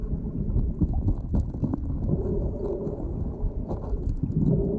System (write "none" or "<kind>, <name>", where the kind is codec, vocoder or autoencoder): none